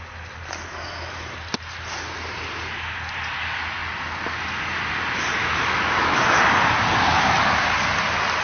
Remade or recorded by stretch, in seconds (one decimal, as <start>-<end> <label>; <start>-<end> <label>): 0.0-5.4 recorded; 5.4-6.4 remade; 6.4-8.4 recorded